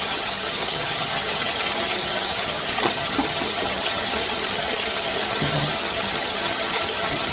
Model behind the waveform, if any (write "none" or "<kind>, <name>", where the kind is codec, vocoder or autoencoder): vocoder, HiFi-GAN